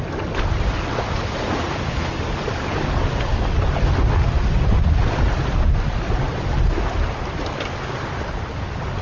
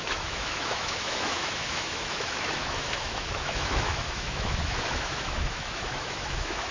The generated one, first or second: second